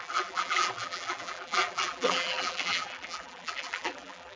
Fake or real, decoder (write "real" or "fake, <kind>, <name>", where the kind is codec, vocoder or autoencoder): fake, vocoder, BigVGAN v2